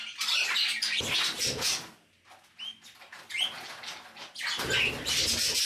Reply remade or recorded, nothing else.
recorded